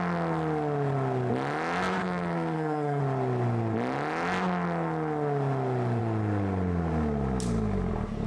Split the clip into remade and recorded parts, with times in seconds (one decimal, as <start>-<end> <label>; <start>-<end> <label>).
0.0-2.0 recorded; 2.0-3.0 remade; 3.0-8.3 recorded